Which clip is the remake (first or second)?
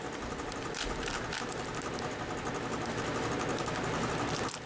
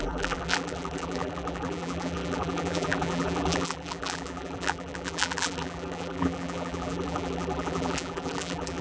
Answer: second